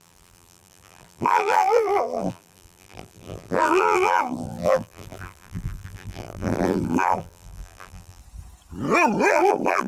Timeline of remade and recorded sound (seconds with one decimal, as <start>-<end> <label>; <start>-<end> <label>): 0.0-8.2 remade; 8.2-9.3 recorded; 9.3-9.9 remade